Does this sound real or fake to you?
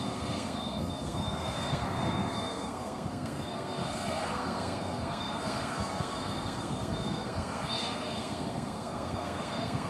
fake